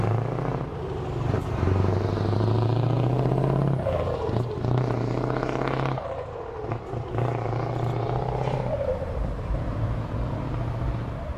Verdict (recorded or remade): remade